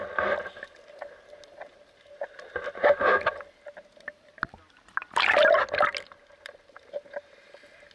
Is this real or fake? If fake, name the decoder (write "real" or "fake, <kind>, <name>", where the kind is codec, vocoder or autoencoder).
real